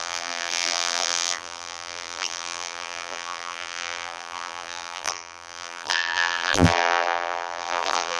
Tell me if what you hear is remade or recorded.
remade